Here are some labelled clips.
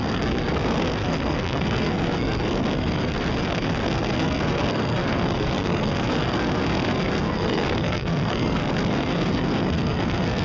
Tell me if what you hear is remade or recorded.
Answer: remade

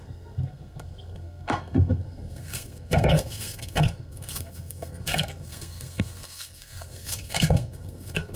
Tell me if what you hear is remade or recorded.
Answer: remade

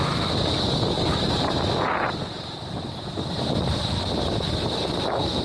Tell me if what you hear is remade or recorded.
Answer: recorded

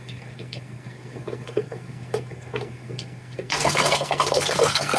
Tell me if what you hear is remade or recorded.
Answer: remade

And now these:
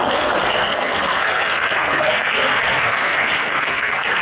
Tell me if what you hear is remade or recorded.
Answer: remade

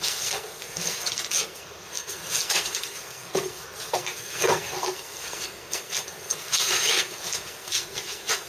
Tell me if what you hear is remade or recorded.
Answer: remade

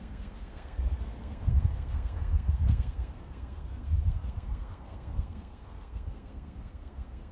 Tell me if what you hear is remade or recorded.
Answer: remade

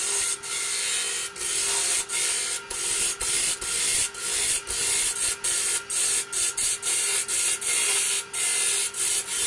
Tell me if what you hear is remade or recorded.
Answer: recorded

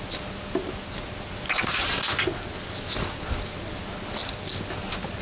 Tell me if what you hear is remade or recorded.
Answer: recorded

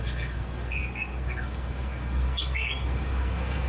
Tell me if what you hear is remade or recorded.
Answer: remade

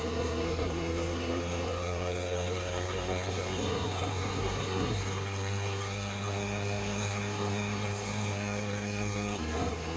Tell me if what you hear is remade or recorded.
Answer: remade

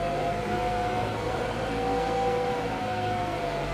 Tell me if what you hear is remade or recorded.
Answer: remade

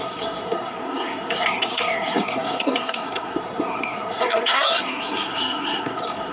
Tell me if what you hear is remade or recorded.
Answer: remade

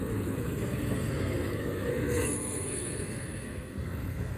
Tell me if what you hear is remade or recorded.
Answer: remade